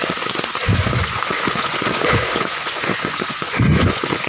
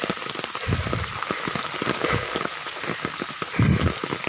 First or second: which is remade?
first